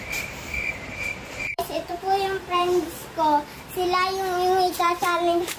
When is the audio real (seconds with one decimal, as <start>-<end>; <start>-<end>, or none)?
3.0-4.8